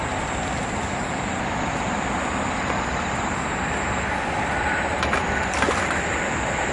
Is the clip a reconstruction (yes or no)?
no